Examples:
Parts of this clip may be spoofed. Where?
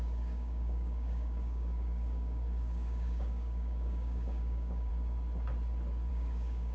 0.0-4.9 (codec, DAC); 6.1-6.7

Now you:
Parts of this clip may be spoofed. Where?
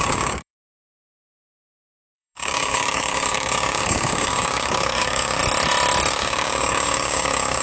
0.0-5.4 (codec, DAC); 6.1-7.6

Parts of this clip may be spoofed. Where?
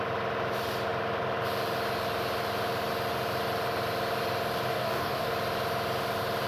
4.7-5.3 (codec, DAC)